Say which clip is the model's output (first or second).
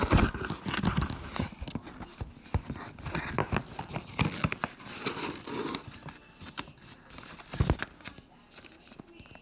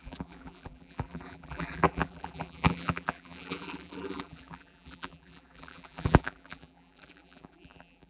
second